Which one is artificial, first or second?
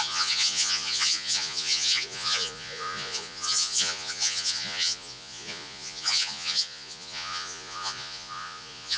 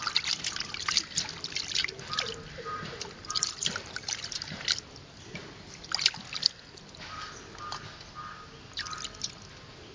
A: first